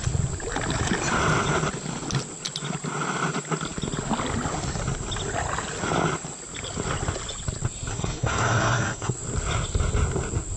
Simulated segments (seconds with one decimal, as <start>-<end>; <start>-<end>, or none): 7.9-9.2